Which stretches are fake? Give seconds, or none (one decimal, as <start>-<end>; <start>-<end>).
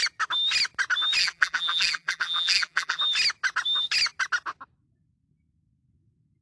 1.2-3.0